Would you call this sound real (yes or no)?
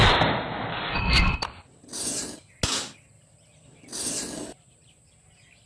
yes